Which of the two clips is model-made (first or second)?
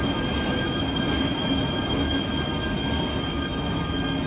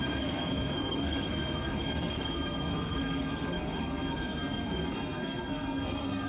second